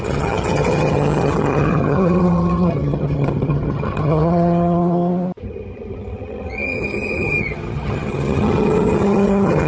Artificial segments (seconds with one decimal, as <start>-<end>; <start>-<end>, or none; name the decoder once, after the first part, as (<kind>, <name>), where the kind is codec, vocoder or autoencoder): 0.0-4.8 (vocoder, HiFi-GAN); 5.4-9.7